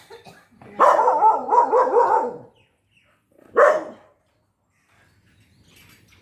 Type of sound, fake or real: real